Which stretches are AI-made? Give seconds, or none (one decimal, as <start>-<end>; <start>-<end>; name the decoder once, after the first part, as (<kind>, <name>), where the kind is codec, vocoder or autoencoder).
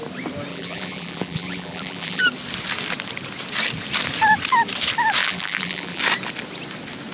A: 0.5-2.2 (vocoder, BigVGAN v2); 5.2-6.0